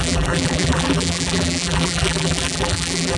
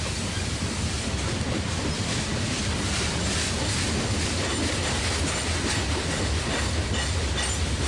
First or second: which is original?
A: second